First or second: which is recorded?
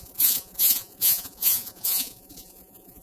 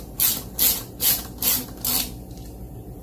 second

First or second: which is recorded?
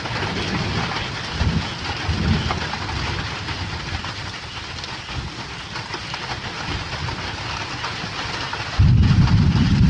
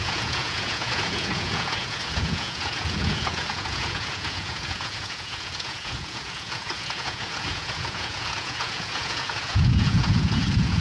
first